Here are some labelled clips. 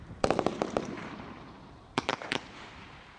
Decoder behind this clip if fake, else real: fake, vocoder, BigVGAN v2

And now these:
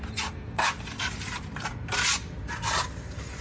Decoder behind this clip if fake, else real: fake, vocoder, BigVGAN v2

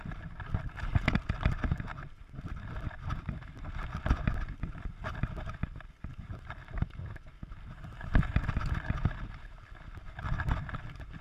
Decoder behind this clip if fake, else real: real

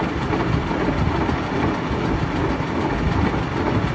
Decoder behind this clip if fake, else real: real